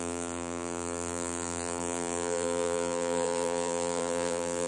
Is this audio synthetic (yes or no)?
yes